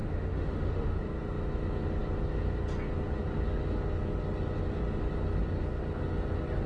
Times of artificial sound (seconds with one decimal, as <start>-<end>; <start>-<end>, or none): 0.0-1.0